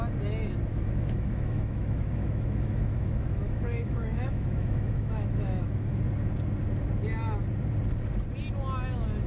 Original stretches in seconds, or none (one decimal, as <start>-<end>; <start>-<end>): 0.0-0.7; 6.0-9.3